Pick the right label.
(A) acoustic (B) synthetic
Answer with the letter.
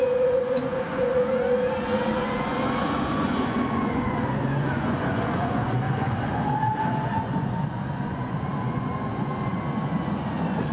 B